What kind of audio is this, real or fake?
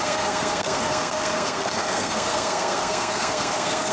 fake